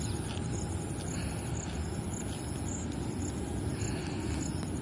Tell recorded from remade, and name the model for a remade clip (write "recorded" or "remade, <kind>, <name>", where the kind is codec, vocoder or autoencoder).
recorded